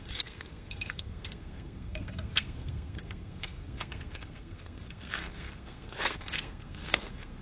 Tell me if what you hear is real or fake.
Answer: fake